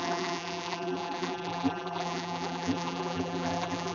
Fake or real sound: fake